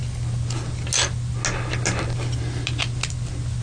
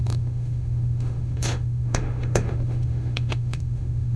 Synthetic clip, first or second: second